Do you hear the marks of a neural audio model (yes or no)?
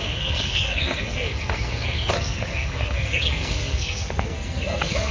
yes